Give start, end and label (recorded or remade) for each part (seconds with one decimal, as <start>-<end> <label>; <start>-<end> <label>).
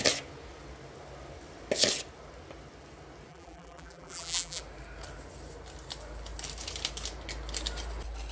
0.0-3.3 recorded; 3.3-4.6 remade; 4.6-8.3 recorded